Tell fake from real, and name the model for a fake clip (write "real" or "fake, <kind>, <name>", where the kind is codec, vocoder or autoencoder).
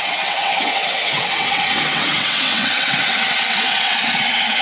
fake, vocoder, WaveNeXt